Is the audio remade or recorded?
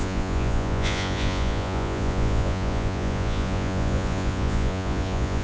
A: remade